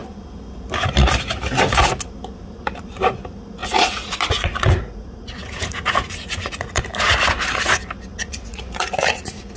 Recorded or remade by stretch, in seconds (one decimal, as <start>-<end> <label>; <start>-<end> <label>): 0.0-3.6 recorded; 3.6-6.8 remade; 6.8-8.1 recorded; 8.1-9.6 remade